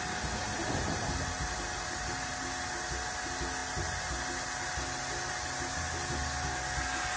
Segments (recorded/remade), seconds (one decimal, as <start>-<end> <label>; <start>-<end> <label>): 0.0-7.2 recorded